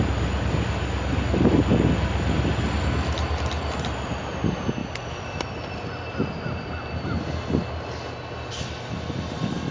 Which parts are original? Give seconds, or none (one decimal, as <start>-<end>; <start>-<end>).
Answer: 0.0-9.7